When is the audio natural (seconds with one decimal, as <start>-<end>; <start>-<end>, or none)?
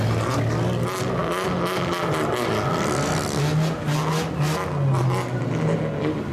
0.0-6.3